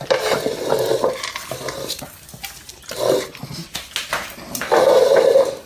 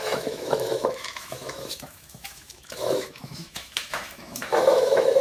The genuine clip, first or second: first